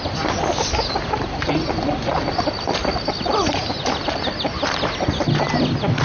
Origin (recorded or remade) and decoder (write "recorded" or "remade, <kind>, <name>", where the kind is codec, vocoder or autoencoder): recorded